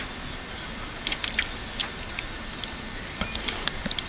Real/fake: real